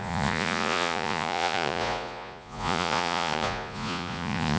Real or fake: fake